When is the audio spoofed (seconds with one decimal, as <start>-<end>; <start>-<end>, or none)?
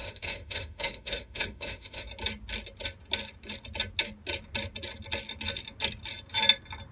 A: 0.0-2.0